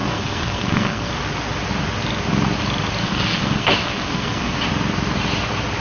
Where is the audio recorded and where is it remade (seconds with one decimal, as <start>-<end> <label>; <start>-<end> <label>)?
0.0-1.1 remade; 1.1-3.0 recorded; 3.0-4.5 remade; 4.5-5.8 recorded